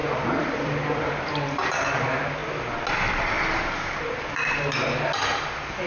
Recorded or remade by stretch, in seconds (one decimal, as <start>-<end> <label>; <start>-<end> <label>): 0.0-1.7 remade; 1.7-5.9 recorded